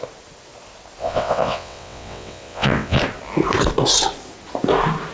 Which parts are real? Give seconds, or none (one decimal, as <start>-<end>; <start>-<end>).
0.0-1.0; 3.0-5.1